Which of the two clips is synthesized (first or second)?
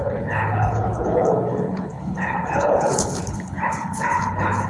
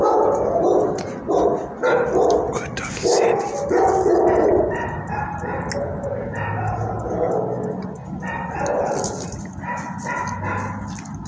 first